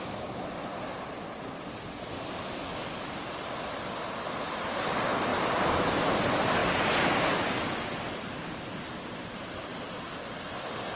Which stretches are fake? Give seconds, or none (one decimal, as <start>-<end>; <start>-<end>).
9.7-11.0